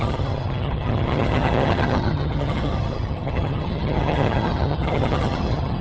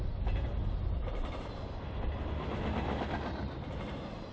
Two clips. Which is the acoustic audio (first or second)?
second